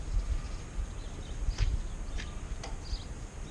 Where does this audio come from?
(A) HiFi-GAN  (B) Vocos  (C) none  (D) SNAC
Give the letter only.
C